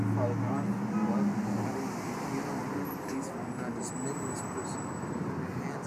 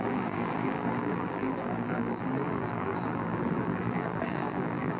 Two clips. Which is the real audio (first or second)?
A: first